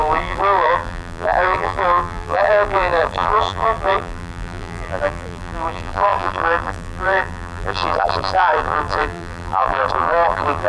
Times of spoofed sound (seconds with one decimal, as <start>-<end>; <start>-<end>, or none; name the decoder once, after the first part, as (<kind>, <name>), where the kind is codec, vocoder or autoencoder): 0.0-10.7 (vocoder, BigVGAN v2)